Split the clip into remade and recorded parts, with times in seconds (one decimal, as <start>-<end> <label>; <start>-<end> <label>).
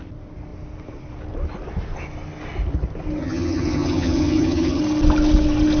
0.0-3.2 recorded; 3.2-4.8 remade; 4.8-5.8 recorded